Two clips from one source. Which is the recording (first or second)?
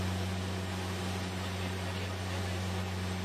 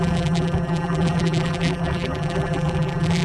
first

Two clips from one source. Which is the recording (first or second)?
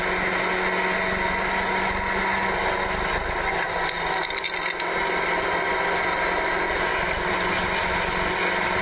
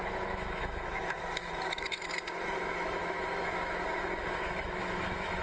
first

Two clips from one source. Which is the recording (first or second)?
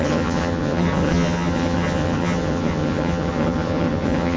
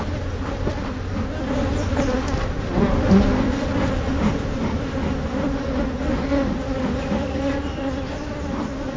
second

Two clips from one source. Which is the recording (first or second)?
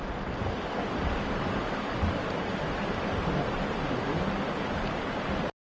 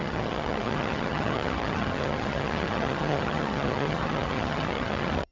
first